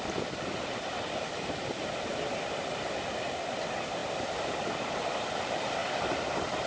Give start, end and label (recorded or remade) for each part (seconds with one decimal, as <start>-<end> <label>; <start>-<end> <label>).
0.0-4.0 recorded; 4.0-4.9 remade; 4.9-5.8 recorded; 5.8-6.7 remade